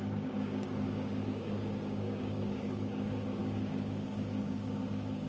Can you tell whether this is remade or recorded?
remade